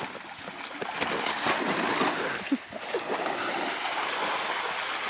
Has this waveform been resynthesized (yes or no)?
no